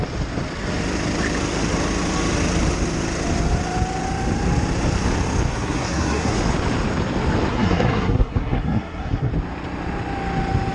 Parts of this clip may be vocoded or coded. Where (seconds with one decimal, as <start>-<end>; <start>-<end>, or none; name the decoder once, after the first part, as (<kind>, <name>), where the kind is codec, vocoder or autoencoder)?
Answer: 5.5-6.4 (codec, SNAC); 7.5-9.3